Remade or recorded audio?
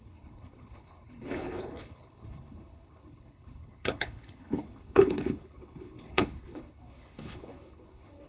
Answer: remade